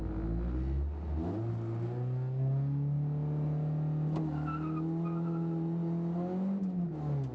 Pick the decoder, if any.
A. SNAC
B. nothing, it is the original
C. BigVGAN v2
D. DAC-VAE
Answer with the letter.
B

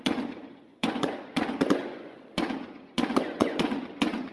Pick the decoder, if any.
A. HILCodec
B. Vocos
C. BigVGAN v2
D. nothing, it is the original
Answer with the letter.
B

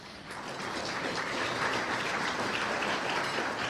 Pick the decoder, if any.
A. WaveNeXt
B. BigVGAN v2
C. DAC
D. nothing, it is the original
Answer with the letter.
B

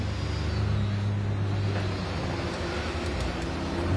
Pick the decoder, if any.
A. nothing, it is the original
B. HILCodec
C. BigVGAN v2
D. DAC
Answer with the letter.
A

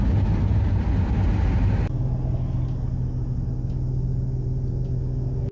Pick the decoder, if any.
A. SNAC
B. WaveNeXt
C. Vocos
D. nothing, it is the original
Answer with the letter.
D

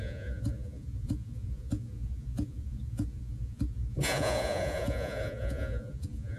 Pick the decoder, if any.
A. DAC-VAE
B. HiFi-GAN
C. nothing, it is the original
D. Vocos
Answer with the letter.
D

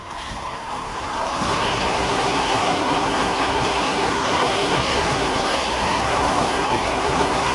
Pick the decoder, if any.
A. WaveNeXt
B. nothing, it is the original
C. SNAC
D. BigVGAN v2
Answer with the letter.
C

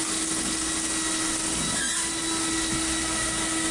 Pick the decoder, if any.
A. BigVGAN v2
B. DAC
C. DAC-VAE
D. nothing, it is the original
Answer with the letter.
D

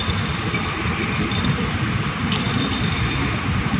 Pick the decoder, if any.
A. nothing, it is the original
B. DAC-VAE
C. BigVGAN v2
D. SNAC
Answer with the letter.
A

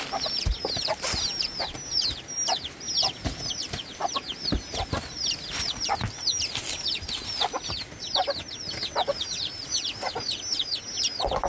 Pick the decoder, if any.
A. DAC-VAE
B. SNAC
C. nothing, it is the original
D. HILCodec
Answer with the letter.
C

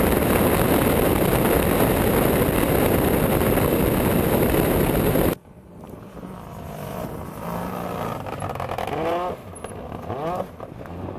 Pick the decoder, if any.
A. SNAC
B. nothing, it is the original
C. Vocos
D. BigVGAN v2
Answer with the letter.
B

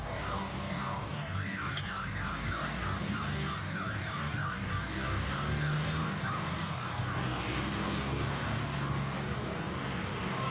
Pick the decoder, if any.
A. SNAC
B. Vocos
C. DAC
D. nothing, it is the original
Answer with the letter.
C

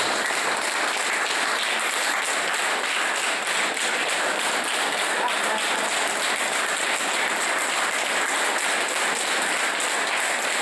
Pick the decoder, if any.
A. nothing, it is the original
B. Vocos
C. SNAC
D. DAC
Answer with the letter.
A